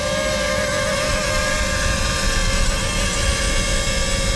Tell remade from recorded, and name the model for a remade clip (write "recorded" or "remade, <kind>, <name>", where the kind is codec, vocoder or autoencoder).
recorded